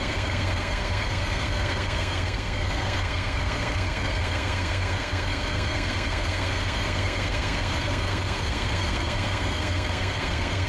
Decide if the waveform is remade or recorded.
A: remade